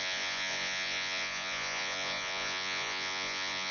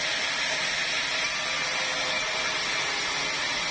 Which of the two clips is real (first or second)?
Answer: second